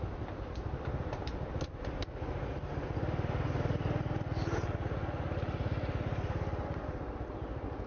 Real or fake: real